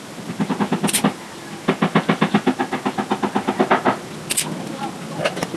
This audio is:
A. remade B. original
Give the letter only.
B